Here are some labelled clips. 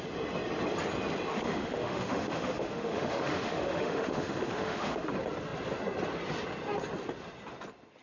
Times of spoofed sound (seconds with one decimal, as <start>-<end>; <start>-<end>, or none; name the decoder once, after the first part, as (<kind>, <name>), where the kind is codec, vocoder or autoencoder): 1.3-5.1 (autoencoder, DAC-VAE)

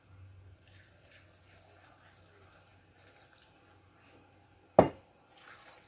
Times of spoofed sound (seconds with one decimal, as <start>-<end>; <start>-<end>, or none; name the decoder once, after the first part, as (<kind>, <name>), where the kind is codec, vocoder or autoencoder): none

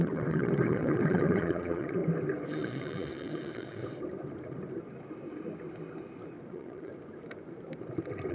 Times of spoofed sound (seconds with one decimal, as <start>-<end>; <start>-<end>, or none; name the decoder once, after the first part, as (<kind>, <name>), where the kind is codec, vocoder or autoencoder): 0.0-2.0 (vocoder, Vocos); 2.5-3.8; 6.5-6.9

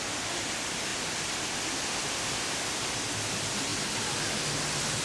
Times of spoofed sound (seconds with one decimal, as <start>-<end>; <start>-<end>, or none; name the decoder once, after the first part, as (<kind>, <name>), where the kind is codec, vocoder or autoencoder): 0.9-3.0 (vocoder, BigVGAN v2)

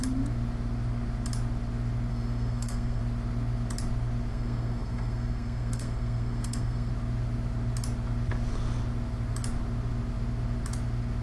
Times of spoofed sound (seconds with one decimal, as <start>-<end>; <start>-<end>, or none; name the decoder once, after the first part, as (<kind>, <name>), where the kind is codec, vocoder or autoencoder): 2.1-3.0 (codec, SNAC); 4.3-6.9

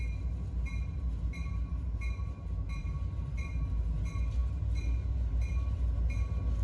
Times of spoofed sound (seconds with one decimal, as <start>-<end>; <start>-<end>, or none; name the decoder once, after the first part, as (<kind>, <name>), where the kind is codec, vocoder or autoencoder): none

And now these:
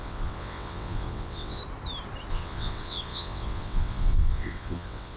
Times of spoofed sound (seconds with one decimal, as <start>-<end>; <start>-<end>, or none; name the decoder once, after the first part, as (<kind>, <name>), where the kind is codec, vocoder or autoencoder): 0.0-1.6 (vocoder, WaveNeXt); 2.3-5.2